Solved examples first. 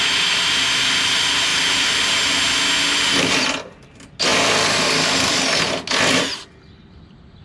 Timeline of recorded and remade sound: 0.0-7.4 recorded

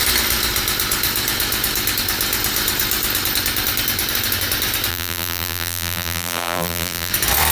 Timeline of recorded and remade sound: 0.0-4.9 recorded; 4.9-7.1 remade; 7.1-7.5 recorded

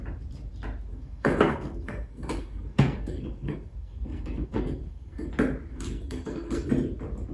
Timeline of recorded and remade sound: 0.0-0.9 recorded; 0.9-5.3 remade; 5.3-5.7 recorded; 5.7-6.7 remade; 6.7-7.3 recorded

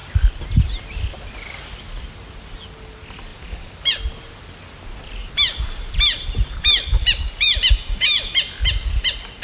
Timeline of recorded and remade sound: 0.0-3.3 recorded; 3.3-4.0 remade; 4.0-5.2 recorded; 5.2-8.5 remade; 8.5-9.4 recorded